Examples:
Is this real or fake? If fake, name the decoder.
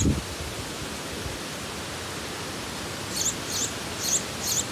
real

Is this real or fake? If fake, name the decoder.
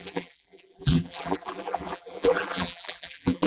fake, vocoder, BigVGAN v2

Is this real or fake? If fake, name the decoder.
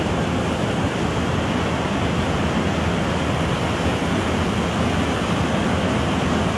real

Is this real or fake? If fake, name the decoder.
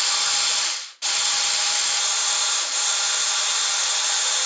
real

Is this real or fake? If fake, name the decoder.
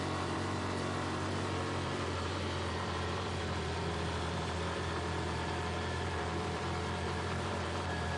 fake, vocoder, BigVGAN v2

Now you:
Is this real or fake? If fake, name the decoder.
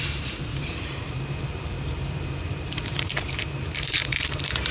fake, vocoder, BigVGAN v2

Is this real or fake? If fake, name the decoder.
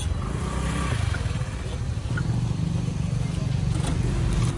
real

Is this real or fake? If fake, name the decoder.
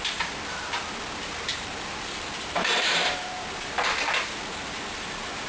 fake, vocoder, BigVGAN v2